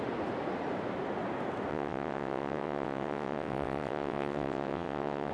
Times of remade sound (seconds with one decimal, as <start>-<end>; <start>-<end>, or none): 1.7-5.3